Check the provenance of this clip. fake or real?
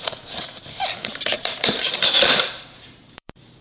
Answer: fake